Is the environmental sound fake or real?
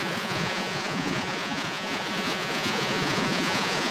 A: fake